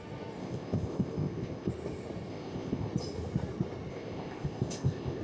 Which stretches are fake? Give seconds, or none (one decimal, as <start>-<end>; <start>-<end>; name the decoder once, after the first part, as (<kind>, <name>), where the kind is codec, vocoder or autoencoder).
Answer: 0.4-1.7 (codec, ZipCodec); 2.3-2.9; 3.9-5.2